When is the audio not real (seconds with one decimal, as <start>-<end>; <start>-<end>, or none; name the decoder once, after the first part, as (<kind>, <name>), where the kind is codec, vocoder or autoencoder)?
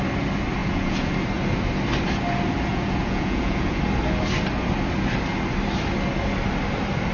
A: 0.6-1.1 (vocoder, Vocos); 2.7-3.8